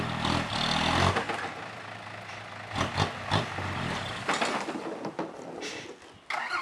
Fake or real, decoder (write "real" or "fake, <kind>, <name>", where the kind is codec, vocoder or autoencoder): real